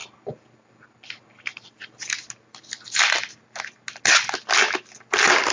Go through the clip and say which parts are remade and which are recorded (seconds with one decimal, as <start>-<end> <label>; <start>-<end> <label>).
0.0-5.5 recorded